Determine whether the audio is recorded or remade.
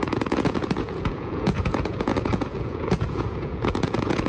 remade